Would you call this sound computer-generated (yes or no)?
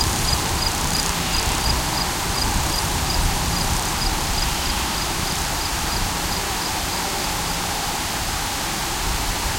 yes